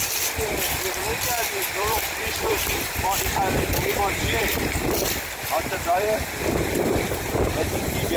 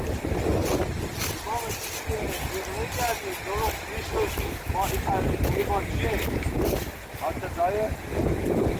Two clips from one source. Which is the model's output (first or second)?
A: first